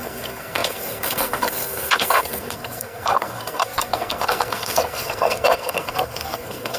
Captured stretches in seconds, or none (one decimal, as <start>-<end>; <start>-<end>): none